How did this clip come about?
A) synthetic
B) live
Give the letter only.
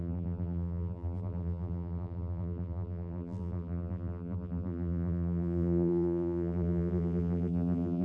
A